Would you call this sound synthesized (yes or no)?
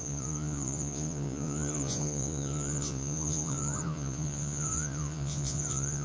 yes